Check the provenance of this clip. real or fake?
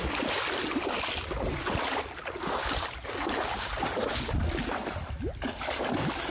real